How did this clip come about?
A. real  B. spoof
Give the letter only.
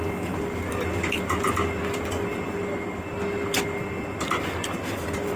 A